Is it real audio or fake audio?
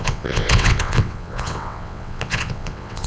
fake